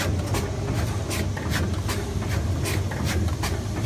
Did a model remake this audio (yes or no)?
no